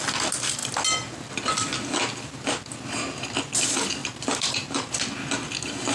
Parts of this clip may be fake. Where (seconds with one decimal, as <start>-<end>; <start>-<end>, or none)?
none